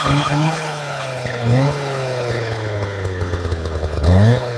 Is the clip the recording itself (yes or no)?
no